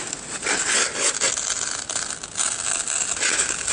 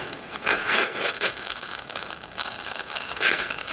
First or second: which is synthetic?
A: second